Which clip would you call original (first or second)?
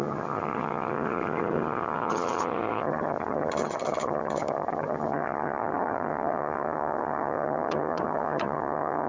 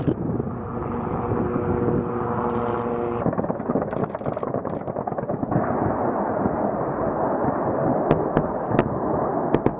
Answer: second